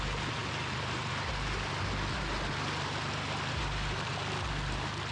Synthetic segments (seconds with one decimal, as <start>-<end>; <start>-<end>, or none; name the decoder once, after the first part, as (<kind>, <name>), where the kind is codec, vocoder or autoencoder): none